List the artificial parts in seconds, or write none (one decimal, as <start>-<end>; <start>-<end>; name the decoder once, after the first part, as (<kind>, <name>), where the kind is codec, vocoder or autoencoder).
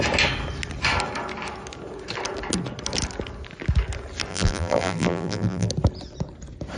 4.3-5.7 (vocoder, BigVGAN v2)